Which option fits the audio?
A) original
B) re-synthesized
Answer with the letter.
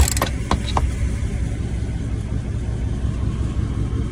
A